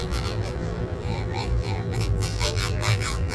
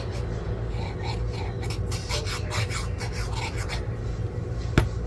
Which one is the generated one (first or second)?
first